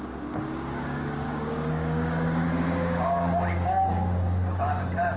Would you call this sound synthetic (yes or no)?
yes